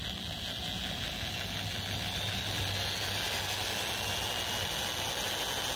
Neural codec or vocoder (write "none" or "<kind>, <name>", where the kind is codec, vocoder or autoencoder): none